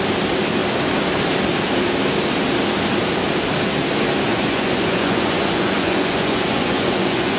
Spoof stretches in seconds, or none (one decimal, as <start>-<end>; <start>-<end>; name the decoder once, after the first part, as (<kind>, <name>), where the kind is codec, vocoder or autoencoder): 4.3-7.4 (vocoder, Vocos)

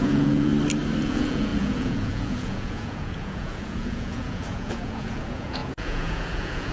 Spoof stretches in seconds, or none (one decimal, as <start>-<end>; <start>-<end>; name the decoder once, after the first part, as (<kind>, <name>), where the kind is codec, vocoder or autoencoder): 0.0-0.5 (vocoder, Vocos); 1.0-6.7

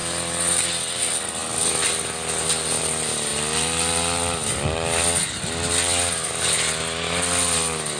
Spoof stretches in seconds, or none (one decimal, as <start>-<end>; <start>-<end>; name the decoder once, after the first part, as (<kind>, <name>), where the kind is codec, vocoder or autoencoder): none

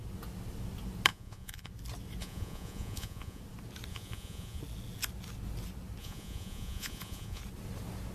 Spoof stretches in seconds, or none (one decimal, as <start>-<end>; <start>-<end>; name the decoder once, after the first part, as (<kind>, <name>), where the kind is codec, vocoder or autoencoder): 1.1-1.7 (vocoder, Vocos); 2.2-3.4; 3.9-4.6; 6.0-7.4